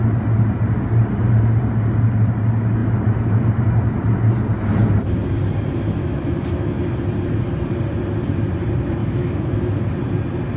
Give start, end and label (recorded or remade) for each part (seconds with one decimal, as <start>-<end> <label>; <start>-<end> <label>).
0.0-6.0 recorded; 6.0-6.8 remade; 6.8-9.0 recorded; 9.0-9.8 remade; 9.8-10.6 recorded